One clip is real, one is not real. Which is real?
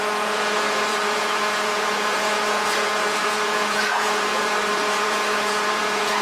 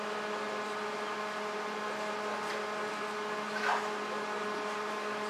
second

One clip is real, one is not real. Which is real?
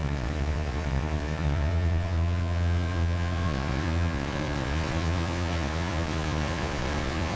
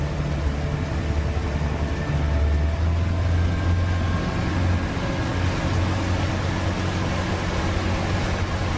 second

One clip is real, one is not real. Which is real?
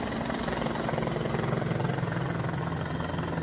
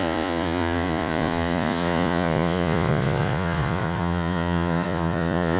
first